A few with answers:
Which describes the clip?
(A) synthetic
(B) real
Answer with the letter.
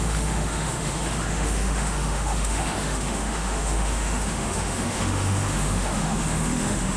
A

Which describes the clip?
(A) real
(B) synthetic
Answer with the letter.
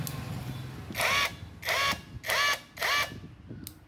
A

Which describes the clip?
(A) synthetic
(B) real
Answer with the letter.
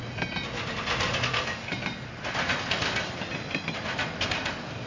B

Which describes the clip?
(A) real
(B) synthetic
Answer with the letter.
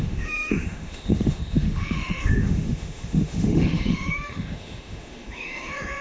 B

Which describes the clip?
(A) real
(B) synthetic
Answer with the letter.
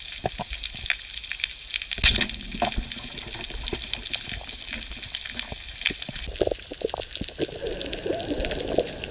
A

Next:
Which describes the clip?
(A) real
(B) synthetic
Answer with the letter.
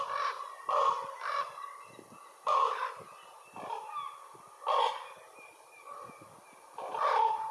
A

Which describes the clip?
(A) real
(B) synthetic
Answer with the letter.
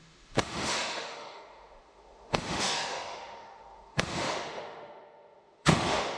B